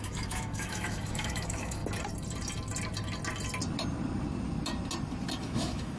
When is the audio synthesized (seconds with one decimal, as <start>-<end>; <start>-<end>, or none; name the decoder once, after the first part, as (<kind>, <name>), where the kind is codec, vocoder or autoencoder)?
0.0-1.8 (autoencoder, DAC-VAE); 5.4-6.0